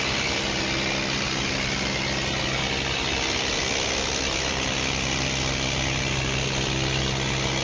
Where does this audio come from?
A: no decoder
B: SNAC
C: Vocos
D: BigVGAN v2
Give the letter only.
A